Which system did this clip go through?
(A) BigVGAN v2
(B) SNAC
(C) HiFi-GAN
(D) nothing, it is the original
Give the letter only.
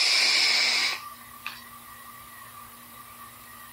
D